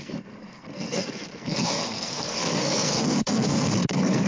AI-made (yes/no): yes